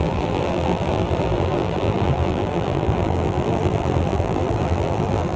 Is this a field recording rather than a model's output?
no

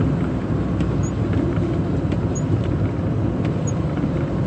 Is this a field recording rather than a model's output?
yes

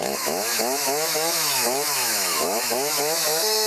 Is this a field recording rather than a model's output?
no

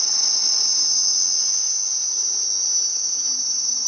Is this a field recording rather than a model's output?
yes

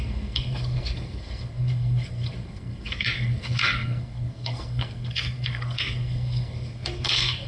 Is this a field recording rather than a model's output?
no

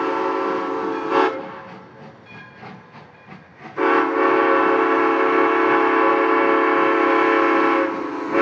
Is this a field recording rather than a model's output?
yes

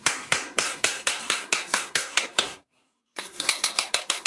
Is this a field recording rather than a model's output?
no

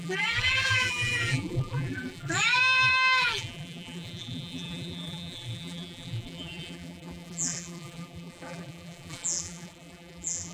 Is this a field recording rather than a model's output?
no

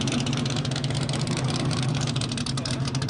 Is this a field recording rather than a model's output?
no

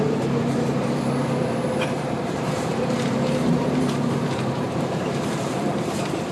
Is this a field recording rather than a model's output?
no